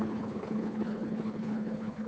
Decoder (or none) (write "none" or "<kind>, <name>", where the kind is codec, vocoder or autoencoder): codec, HILCodec